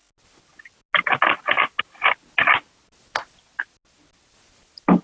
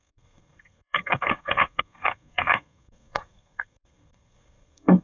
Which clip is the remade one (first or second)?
second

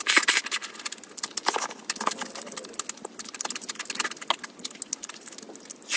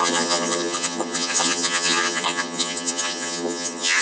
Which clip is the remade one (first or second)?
second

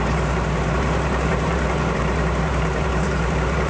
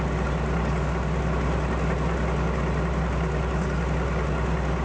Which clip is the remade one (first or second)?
first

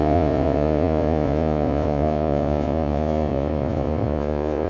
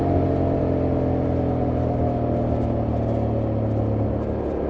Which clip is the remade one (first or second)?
first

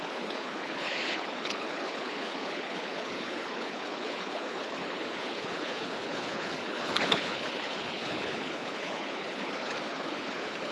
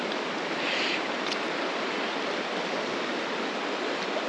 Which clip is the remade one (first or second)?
first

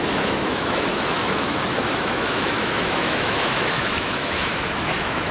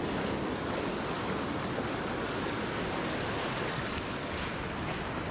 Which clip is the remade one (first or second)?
first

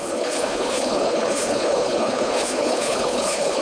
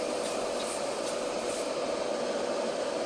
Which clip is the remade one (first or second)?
first